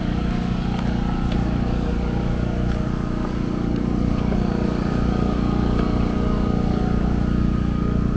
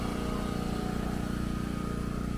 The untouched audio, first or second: second